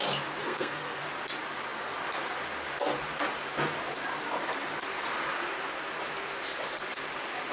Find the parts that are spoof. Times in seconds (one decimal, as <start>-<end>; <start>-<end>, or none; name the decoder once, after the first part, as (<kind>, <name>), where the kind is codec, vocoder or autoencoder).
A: 0.4-1.0 (codec, SNAC)